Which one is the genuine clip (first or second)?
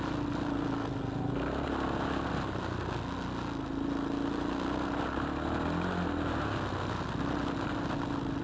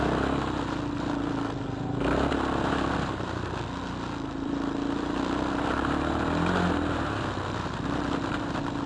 first